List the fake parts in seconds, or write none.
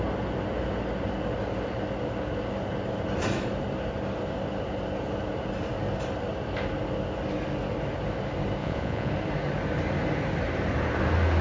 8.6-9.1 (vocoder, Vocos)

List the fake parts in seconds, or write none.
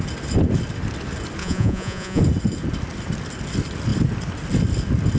1.4-2.2 (vocoder, Vocos)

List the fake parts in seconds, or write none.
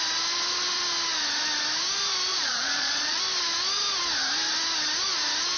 2.3-3.2 (vocoder, Vocos)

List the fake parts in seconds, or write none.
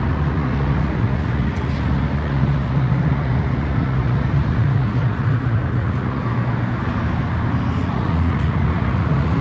0.0-6.2 (vocoder, Vocos); 7.8-9.4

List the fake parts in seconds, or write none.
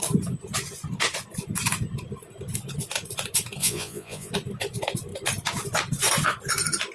3.6-4.3 (vocoder, Vocos)